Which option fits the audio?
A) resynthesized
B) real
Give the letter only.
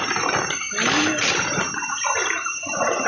A